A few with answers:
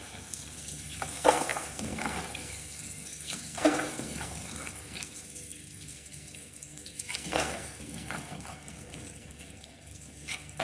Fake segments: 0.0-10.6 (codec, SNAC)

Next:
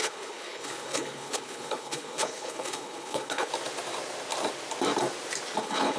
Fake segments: 0.0-3.5 (codec, HILCodec); 5.6-6.0

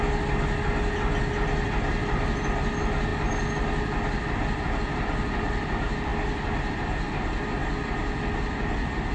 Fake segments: none

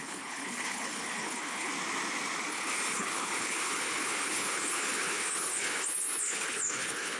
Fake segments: 0.0-1.7 (codec, HILCodec); 2.5-7.2